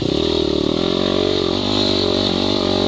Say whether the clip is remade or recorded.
remade